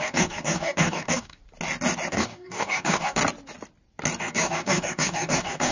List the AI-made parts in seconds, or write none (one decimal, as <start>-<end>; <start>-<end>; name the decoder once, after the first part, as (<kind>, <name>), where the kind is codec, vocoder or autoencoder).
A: 0.0-1.4 (codec, DAC); 2.1-3.2; 4.2-5.7